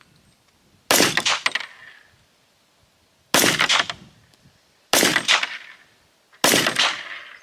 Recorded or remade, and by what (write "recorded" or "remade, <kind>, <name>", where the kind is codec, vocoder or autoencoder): recorded